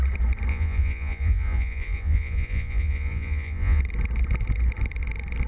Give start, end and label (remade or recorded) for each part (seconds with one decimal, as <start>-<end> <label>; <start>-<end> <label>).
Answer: 0.0-0.5 recorded; 0.5-3.8 remade; 3.8-5.5 recorded